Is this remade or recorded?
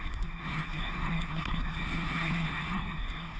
remade